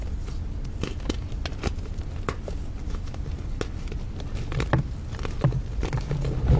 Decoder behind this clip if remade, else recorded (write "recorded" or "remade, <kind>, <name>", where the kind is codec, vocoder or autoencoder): recorded